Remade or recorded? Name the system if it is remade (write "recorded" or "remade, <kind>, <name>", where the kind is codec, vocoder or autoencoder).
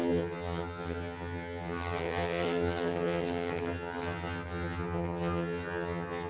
remade, vocoder, HiFi-GAN